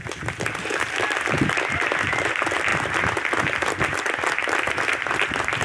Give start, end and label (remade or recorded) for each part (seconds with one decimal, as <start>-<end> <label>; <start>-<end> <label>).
0.0-5.6 recorded